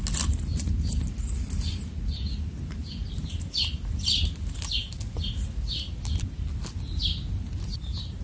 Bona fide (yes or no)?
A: yes